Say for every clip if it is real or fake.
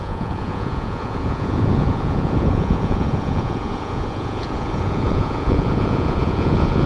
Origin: fake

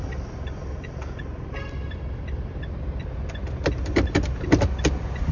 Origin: real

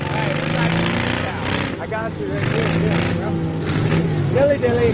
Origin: real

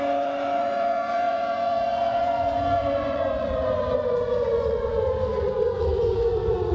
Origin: fake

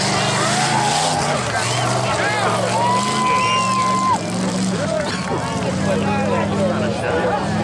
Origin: real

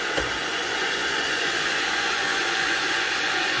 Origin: fake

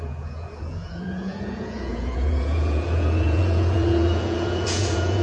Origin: fake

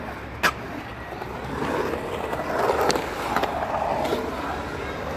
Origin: real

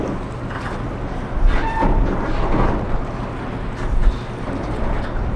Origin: real